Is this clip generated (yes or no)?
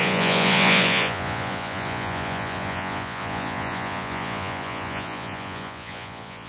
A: yes